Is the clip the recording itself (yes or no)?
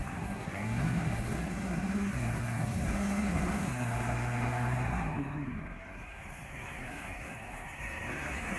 no